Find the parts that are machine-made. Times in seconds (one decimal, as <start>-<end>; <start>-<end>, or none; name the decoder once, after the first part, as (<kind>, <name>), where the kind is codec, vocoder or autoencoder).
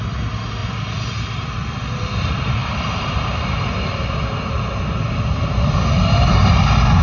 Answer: 0.6-1.7 (vocoder, BigVGAN v2); 2.6-4.1